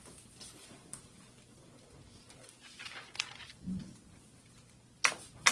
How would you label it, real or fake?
real